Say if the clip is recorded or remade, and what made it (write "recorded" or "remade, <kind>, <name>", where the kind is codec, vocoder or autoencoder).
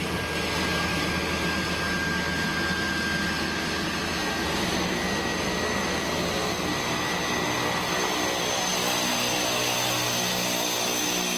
recorded